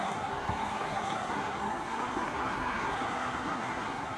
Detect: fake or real fake